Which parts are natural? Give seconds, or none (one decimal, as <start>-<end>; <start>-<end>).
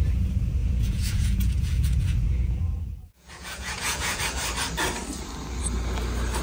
0.0-0.6; 4.2-6.4